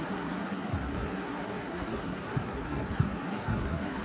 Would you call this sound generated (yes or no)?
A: yes